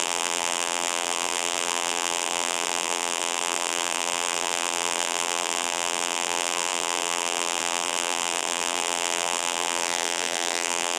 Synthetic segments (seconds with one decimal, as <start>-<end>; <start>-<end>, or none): 0.0-11.0